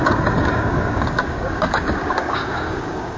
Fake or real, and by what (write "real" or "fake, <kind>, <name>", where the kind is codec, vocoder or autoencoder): fake, codec, DAC